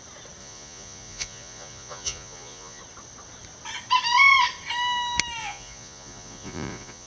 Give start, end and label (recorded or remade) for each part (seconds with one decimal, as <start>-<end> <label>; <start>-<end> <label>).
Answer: 0.0-0.4 recorded; 0.4-2.8 remade; 2.8-5.4 recorded; 5.4-7.1 remade